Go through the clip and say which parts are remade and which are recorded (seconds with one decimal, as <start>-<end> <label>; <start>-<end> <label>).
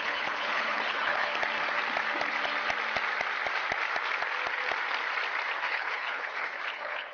0.0-1.3 remade; 1.3-5.6 recorded; 5.6-7.1 remade